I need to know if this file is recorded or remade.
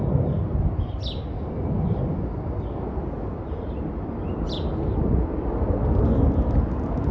recorded